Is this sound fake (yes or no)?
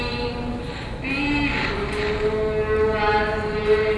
no